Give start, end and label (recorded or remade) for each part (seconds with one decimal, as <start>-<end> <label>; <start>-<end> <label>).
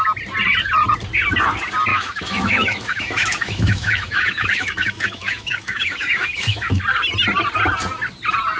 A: 0.0-1.9 recorded; 1.9-6.8 remade; 6.8-8.6 recorded